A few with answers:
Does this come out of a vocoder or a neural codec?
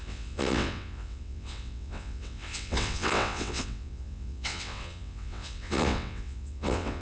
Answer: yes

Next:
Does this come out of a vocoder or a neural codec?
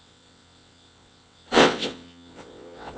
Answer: yes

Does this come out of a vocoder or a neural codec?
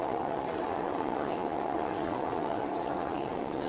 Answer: yes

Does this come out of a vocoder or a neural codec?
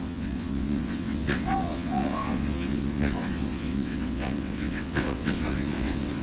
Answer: yes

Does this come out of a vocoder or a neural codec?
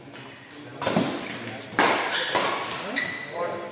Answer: no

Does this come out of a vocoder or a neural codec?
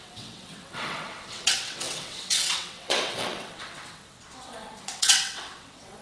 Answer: yes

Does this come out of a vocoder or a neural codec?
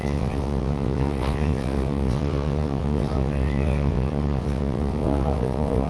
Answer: yes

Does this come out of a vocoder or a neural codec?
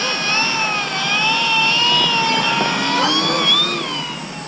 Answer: no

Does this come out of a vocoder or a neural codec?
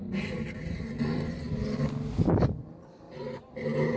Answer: no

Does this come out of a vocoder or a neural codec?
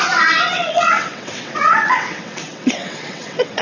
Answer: yes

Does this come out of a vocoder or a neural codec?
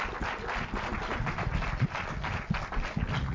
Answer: no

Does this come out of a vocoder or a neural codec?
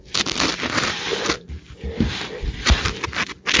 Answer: no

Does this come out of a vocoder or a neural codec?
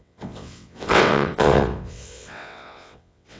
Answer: yes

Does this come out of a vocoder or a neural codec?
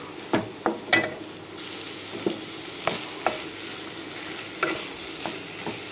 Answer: no